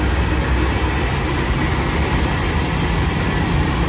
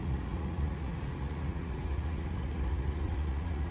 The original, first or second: first